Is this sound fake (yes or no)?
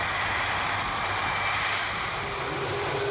no